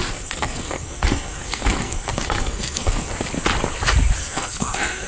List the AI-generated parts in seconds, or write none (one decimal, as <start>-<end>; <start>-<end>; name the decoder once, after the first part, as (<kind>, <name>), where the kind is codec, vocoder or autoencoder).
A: 0.0-3.1 (codec, SNAC); 4.2-5.1